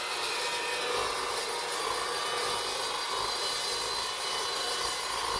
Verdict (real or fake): real